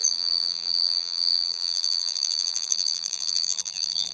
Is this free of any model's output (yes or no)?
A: no